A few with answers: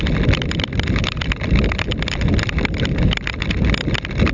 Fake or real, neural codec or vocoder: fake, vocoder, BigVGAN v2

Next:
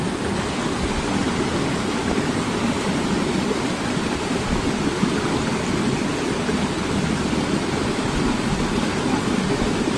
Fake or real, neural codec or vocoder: real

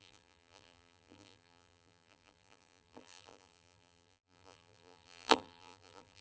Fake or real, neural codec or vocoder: fake, vocoder, BigVGAN v2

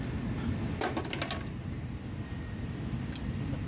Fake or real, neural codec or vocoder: real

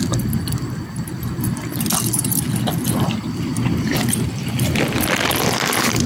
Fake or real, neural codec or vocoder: fake, vocoder, BigVGAN v2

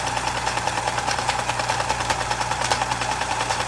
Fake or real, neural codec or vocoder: fake, vocoder, BigVGAN v2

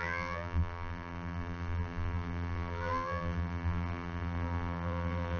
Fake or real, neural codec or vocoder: fake, vocoder, BigVGAN v2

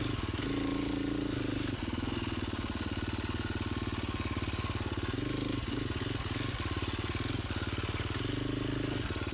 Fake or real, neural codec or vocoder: real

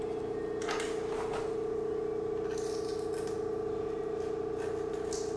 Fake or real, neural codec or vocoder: real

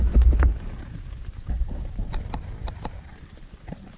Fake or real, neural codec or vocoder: fake, vocoder, BigVGAN v2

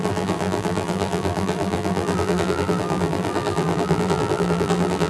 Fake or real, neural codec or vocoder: fake, vocoder, BigVGAN v2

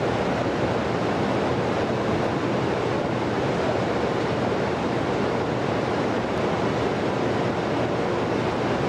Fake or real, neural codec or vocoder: real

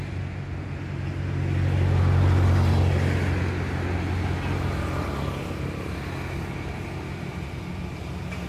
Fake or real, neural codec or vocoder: real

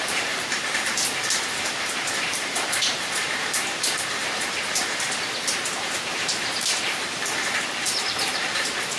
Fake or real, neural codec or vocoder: fake, vocoder, BigVGAN v2